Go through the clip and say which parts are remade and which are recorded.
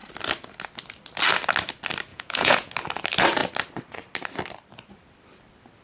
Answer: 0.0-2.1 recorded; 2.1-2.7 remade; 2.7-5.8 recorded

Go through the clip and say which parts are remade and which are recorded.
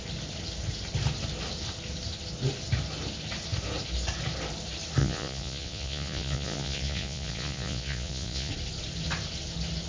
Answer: 0.0-5.0 recorded; 5.0-8.5 remade; 8.5-9.9 recorded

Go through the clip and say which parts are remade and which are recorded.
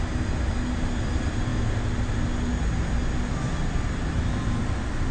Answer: 0.0-5.1 recorded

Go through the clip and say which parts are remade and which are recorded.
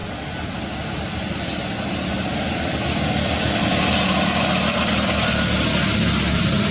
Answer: 0.0-6.7 recorded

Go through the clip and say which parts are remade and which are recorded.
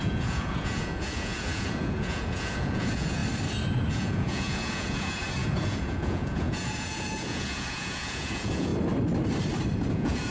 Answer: 0.0-3.2 remade; 3.2-3.9 recorded; 3.9-8.7 remade; 8.7-9.9 recorded; 9.9-10.3 remade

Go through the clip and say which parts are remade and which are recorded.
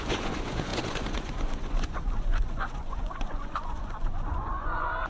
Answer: 0.0-5.1 remade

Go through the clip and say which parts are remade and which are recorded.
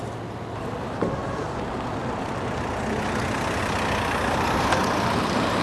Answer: 0.0-5.6 recorded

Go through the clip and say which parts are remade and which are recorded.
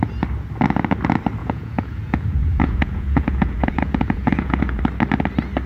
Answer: 0.0-1.4 recorded; 1.4-4.8 remade; 4.8-5.7 recorded